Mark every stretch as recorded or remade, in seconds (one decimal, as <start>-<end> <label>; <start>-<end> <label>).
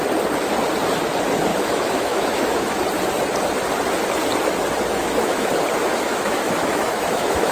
0.0-1.5 recorded; 1.5-2.8 remade; 2.8-4.9 recorded; 4.9-5.5 remade; 5.5-5.9 recorded; 5.9-7.5 remade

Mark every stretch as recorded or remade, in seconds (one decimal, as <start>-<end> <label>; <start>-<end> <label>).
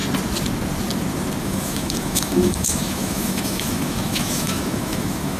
0.0-1.4 recorded; 1.4-5.4 remade